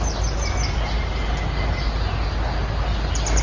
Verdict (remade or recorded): recorded